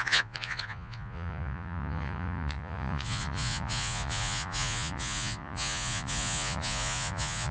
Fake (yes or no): yes